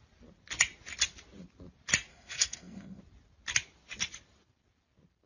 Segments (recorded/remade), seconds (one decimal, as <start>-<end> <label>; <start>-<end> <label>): 0.0-2.1 recorded; 2.1-3.0 remade; 3.0-5.3 recorded

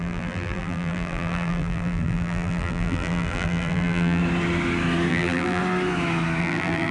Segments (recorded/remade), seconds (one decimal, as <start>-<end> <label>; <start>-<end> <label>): 0.0-4.2 remade; 4.2-5.1 recorded; 5.1-5.6 remade; 5.6-6.4 recorded; 6.4-6.9 remade

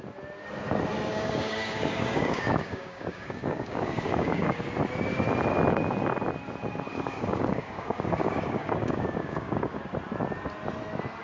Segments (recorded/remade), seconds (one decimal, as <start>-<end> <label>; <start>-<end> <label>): 0.0-1.1 recorded; 1.1-4.6 remade; 4.6-6.9 recorded; 6.9-9.8 remade; 9.8-11.2 recorded

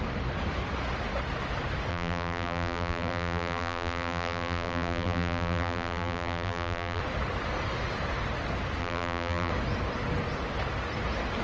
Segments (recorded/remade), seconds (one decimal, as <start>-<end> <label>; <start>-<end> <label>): 0.0-1.9 recorded; 1.9-7.0 remade; 7.0-8.8 recorded; 8.8-9.5 remade; 9.5-11.4 recorded